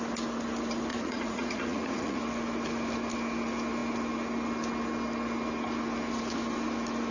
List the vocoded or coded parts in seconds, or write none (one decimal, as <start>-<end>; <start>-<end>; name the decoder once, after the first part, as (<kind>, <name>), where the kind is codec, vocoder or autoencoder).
0.9-2.2 (vocoder, Vocos)